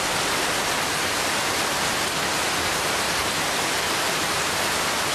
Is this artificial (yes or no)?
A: no